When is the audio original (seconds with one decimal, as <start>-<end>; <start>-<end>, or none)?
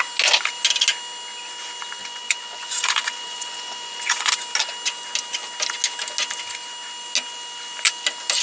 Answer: 0.0-2.0; 4.3-8.4